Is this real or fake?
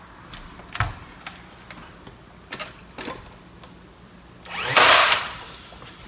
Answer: real